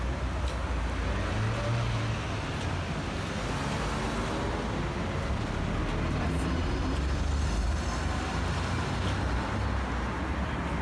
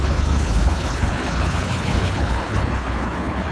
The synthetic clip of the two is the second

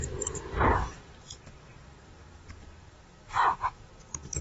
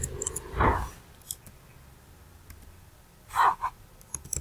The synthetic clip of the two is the first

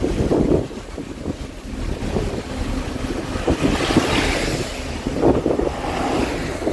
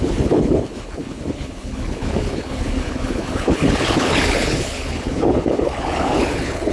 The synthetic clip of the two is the second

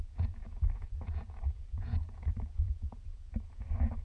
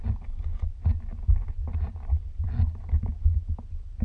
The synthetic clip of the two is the first